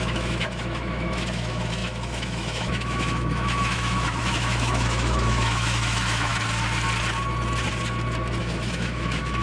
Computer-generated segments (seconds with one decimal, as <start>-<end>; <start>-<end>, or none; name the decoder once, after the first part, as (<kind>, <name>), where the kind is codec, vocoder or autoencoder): 0.0-6.3 (autoencoder, DAC-VAE); 8.4-9.4